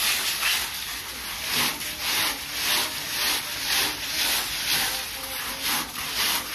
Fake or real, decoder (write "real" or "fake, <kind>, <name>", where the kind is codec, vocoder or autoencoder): real